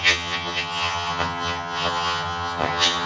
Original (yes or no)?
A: no